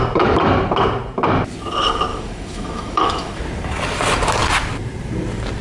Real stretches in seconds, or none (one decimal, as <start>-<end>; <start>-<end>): 0.0-2.1; 3.4-5.6